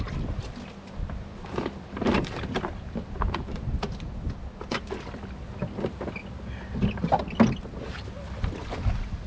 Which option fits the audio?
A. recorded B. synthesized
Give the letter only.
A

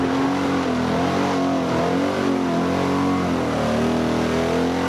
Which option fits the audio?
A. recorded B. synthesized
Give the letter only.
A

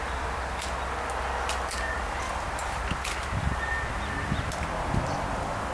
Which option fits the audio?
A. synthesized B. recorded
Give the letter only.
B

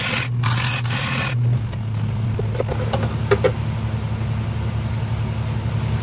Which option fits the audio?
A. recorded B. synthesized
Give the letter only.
A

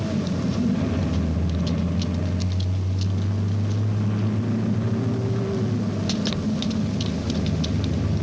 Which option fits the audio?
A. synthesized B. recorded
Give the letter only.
B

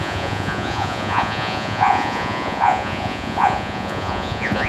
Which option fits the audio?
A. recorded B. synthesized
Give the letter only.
B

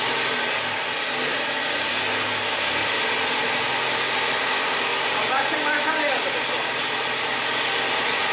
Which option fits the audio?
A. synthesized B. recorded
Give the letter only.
B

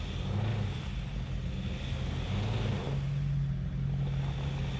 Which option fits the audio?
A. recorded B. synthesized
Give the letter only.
A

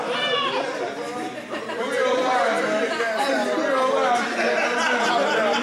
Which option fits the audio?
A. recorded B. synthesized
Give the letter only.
A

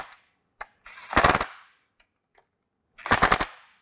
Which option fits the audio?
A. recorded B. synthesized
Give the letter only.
A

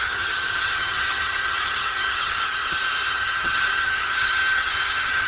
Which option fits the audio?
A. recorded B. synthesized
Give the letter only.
B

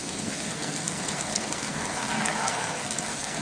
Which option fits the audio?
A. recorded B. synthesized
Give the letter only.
B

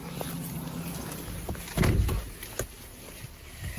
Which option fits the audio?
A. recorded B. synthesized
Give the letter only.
A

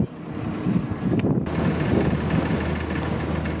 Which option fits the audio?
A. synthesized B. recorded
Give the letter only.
B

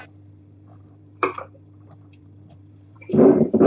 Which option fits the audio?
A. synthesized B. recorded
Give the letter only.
A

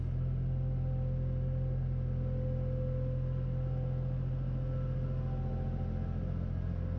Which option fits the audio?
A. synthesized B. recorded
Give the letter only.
B